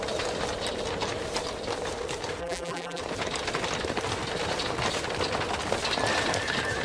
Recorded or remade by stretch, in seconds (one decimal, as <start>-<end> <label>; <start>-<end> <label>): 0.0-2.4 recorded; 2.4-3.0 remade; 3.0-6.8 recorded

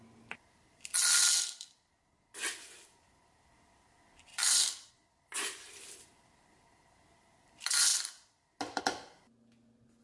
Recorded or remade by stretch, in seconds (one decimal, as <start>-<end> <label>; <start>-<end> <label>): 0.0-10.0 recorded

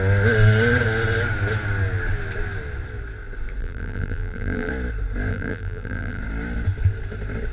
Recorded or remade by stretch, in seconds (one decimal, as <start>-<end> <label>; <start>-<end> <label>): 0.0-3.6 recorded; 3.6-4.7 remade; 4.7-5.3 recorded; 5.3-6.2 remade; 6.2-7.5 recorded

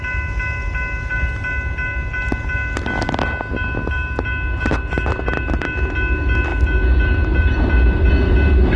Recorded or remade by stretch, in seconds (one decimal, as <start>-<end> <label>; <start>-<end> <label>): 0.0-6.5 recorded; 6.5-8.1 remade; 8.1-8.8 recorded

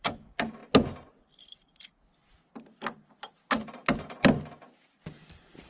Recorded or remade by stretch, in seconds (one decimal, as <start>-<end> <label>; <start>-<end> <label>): 0.0-0.6 remade; 0.6-1.2 recorded; 1.2-3.8 remade; 3.8-4.6 recorded; 4.6-5.7 remade

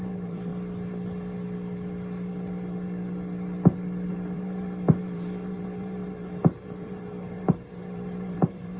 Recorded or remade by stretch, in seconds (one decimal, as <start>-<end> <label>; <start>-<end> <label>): 0.0-0.5 remade; 0.5-4.1 recorded; 4.1-8.8 remade